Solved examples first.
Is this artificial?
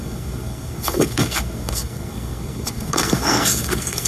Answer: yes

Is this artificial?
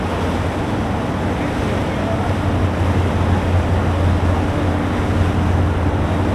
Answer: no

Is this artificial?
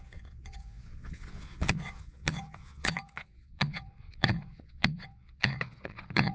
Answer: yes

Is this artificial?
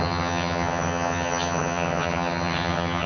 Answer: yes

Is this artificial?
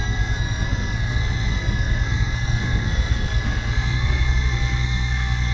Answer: yes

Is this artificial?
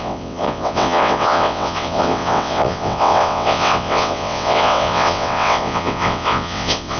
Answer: yes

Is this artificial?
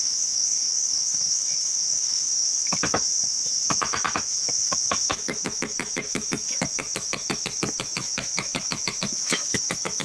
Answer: yes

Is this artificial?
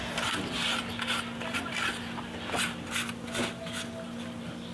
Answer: no